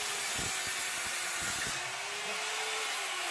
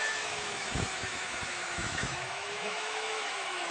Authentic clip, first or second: first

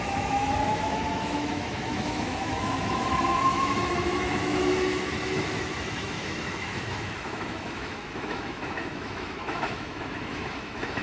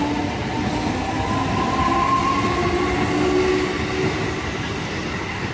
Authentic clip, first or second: second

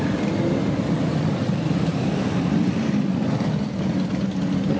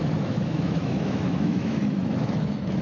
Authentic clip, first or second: first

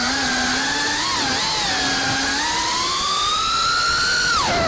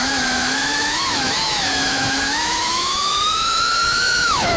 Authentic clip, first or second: first